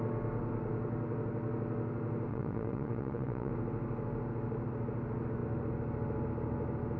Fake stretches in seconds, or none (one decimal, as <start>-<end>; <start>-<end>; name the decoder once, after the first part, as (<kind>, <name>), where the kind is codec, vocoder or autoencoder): 2.3-3.5 (vocoder, WaveNeXt)